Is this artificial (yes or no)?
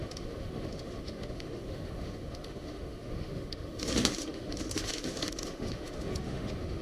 yes